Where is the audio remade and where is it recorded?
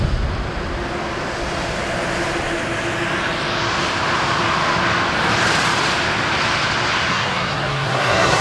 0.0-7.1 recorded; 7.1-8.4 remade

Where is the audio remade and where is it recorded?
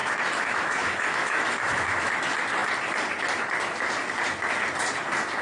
0.0-2.1 remade; 2.1-5.4 recorded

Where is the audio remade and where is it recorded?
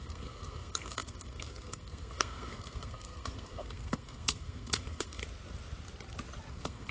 0.0-5.2 remade; 5.2-6.5 recorded; 6.5-6.9 remade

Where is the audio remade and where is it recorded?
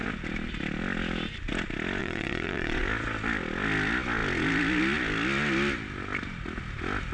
0.0-2.0 recorded; 2.0-2.8 remade; 2.8-7.1 recorded